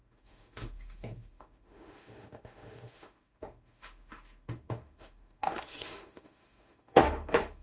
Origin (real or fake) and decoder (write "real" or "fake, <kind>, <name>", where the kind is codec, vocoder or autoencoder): fake, autoencoder, DAC-VAE